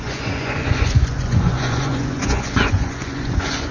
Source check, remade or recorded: remade